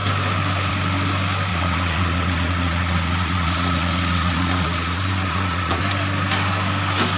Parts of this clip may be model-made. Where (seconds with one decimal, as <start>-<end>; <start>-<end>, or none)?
1.5-5.8